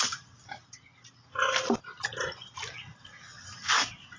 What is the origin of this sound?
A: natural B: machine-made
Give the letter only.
A